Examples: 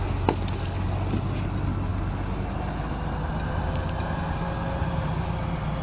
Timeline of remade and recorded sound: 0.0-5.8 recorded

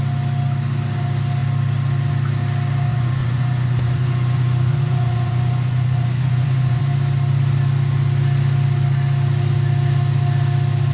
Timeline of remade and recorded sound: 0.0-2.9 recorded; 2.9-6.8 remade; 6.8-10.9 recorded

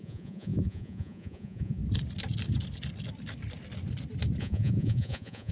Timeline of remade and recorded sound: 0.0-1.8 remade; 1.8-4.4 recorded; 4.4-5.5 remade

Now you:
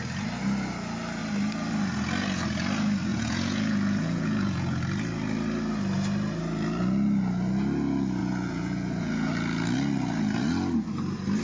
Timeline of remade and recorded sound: 0.0-3.1 recorded; 3.1-4.8 remade; 4.8-8.2 recorded; 8.2-9.3 remade; 9.3-11.4 recorded